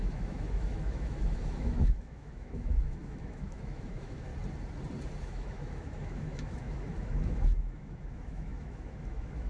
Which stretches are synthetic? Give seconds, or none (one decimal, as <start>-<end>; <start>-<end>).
0.0-4.3; 5.2-9.5